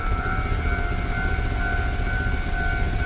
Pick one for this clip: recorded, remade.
recorded